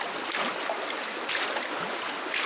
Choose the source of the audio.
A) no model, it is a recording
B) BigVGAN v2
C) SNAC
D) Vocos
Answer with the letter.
A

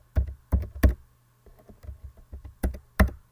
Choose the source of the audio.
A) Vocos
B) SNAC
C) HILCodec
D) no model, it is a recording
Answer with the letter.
D